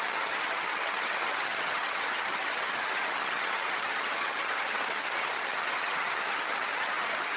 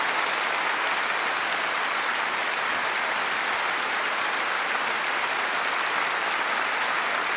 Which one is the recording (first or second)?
second